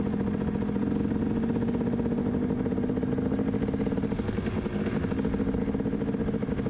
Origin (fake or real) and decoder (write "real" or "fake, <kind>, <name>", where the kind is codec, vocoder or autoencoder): real